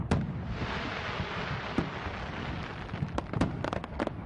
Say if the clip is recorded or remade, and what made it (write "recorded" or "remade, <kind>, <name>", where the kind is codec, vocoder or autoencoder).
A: recorded